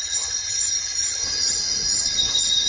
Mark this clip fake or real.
fake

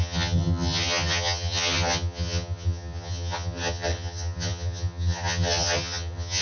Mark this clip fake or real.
fake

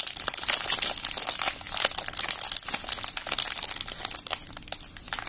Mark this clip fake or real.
real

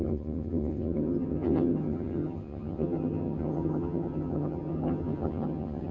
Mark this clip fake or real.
fake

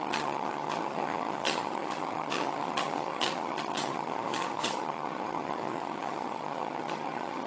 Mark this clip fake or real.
fake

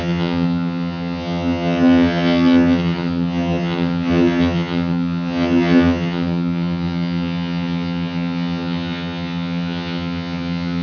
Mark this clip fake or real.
fake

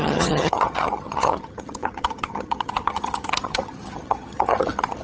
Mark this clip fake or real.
fake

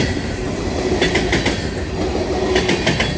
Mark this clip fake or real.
real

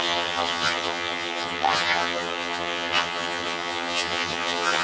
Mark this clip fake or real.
fake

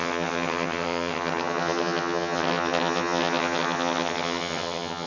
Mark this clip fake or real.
fake